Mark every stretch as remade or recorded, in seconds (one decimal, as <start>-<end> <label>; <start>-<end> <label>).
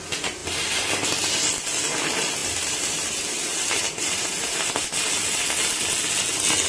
0.0-2.4 recorded; 2.4-5.1 remade; 5.1-6.7 recorded